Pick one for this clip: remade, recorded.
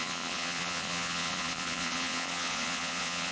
remade